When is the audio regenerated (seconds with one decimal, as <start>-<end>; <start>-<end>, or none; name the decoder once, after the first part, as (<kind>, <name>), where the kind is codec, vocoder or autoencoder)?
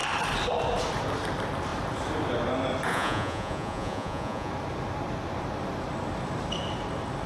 2.9-4.5 (vocoder, Vocos)